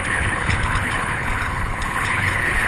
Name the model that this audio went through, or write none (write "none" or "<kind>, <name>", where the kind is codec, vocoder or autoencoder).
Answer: codec, HILCodec